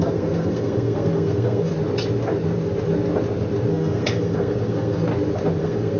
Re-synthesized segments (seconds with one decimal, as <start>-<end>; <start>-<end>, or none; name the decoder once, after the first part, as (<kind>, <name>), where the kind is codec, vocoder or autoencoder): 0.0-1.7 (codec, SNAC); 3.7-5.1; 5.6-6.0